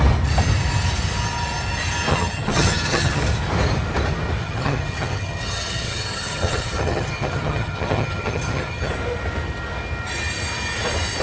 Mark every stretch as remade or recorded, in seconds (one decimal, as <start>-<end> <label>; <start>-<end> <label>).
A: 0.0-2.1 recorded; 2.1-3.2 remade; 3.2-4.4 recorded; 4.4-8.9 remade; 8.9-11.2 recorded